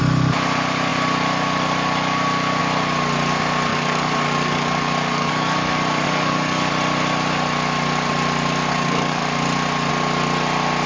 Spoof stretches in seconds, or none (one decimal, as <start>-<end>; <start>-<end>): 3.7-6.7; 8.7-9.2